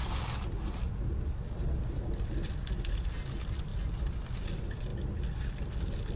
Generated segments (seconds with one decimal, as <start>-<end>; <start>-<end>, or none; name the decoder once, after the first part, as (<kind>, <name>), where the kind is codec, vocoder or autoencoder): none